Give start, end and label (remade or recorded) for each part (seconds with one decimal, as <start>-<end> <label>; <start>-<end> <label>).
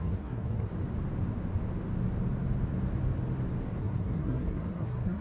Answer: 0.0-0.7 remade; 0.7-3.8 recorded; 3.8-5.2 remade